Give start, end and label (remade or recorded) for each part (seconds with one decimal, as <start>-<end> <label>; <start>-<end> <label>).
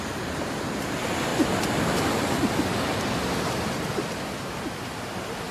0.0-5.5 recorded